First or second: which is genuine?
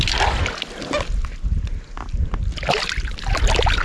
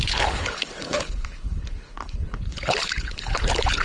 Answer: first